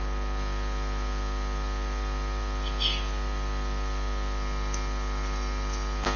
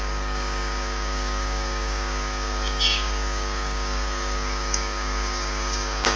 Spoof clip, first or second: second